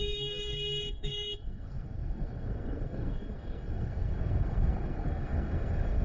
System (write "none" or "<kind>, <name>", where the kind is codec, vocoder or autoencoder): codec, SNAC